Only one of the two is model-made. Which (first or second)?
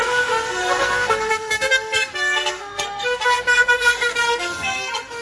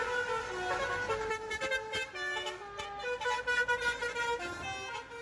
first